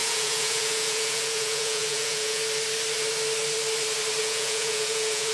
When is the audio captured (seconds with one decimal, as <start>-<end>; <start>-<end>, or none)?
2.4-4.2